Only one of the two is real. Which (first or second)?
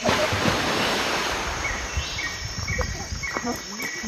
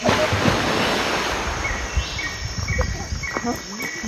second